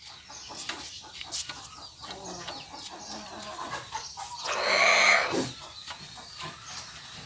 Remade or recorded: recorded